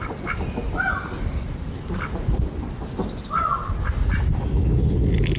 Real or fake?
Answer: real